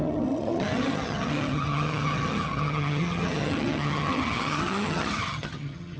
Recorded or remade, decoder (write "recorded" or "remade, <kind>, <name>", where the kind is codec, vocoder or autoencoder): remade, vocoder, HiFi-GAN